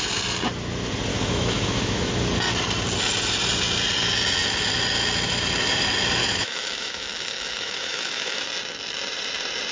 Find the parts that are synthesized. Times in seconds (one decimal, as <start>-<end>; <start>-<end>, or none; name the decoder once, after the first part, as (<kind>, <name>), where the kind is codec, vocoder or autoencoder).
1.1-2.1 (autoencoder, DAC-VAE); 6.2-8.4